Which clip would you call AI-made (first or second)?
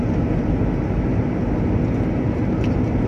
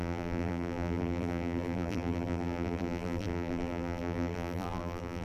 second